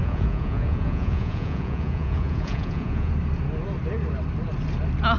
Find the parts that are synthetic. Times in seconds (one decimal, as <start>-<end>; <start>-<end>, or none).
0.0-3.1